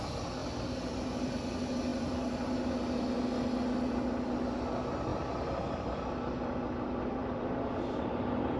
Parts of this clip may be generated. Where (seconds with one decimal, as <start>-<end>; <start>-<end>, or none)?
none